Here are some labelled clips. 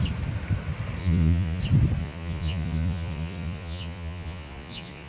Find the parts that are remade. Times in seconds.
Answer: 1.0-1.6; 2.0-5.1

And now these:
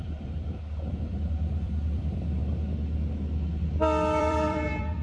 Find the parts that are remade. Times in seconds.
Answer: 0.0-2.4; 4.2-5.0

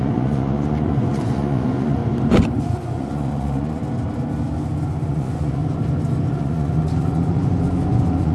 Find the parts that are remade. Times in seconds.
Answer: 0.0-2.0; 2.6-3.8; 5.1-5.6; 6.3-8.3

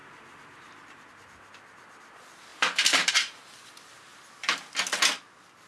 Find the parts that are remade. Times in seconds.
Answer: 0.0-1.1; 2.5-3.4

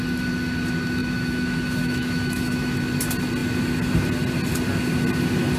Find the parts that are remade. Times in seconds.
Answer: 1.0-2.8